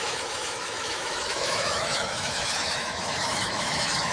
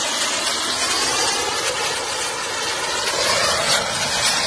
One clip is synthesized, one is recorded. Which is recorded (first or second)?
second